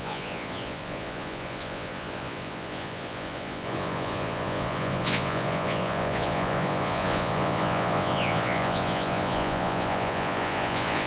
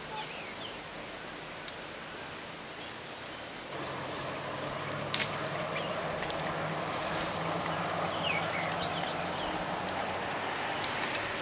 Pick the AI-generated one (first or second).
first